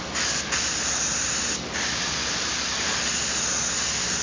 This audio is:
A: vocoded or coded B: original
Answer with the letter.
B